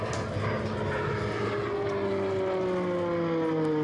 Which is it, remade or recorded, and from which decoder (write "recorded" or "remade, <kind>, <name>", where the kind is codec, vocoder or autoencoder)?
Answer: recorded